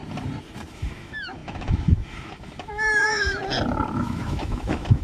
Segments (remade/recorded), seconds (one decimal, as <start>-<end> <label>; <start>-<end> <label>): 0.0-0.7 recorded; 0.7-3.4 remade; 3.4-3.9 recorded; 3.9-5.0 remade